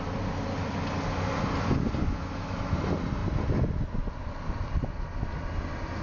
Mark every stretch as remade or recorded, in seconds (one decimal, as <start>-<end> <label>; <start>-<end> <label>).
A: 0.0-2.0 recorded; 2.0-2.7 remade; 2.7-6.0 recorded